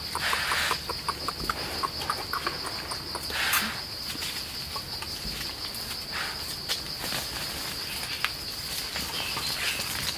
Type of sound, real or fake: real